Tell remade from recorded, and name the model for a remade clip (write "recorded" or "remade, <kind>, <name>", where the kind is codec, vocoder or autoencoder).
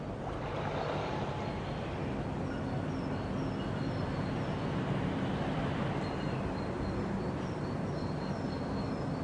recorded